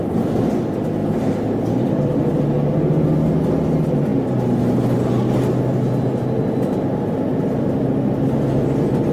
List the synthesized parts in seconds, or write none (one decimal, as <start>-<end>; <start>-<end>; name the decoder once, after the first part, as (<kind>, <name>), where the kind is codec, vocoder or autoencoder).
1.0-2.4 (vocoder, BigVGAN v2)